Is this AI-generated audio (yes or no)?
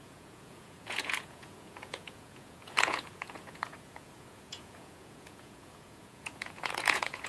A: yes